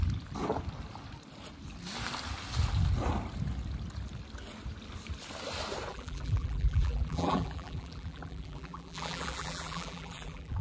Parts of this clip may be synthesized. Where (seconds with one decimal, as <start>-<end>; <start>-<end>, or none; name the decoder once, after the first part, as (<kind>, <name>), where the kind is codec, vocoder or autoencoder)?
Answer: 5.9-10.6 (vocoder, BigVGAN v2)